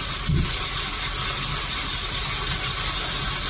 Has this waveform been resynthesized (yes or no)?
no